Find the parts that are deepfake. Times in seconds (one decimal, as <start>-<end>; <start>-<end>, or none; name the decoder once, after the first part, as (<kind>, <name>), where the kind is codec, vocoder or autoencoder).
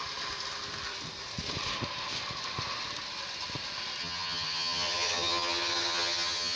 4.0-6.6 (vocoder, HiFi-GAN)